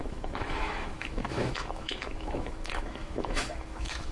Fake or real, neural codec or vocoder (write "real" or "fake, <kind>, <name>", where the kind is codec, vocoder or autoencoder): fake, autoencoder, DAC-VAE